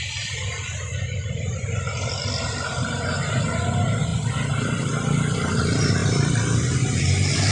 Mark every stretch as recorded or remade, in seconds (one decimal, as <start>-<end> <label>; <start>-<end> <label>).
0.0-7.5 recorded